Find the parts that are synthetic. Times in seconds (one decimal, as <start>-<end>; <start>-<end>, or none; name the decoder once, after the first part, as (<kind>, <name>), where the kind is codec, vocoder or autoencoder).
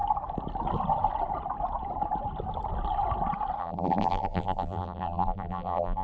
3.6-6.0 (vocoder, BigVGAN v2)